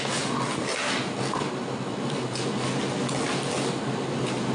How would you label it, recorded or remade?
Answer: recorded